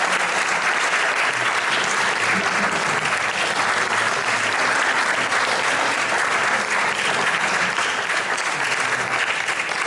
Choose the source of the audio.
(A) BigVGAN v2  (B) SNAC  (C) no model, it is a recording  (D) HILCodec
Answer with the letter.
C